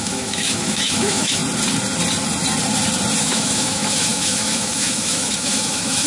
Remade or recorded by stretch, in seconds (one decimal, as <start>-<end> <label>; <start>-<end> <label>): 0.0-1.4 remade; 1.4-3.2 recorded; 3.2-6.1 remade